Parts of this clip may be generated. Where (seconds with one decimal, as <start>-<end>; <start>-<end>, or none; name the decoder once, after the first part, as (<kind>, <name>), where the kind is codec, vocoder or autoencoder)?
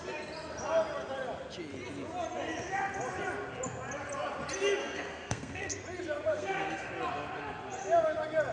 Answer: 4.8-5.8 (codec, SNAC); 6.3-6.9